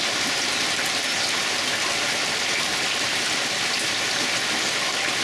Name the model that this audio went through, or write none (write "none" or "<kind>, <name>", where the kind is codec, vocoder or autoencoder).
none